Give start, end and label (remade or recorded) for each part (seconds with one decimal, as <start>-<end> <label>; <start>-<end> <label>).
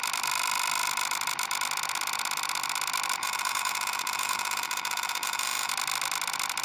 0.0-3.2 recorded; 3.2-5.7 remade; 5.7-6.6 recorded